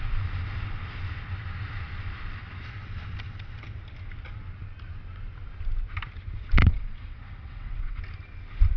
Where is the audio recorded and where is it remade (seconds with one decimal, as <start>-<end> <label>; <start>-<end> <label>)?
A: 0.0-6.6 recorded; 6.6-8.0 remade; 8.0-8.8 recorded